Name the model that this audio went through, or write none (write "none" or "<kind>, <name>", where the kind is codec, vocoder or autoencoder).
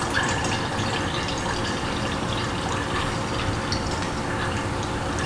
vocoder, BigVGAN v2